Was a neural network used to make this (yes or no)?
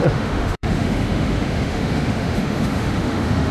yes